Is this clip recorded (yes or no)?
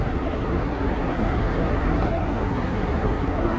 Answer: no